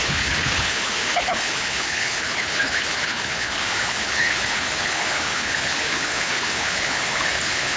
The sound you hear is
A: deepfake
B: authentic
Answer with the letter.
A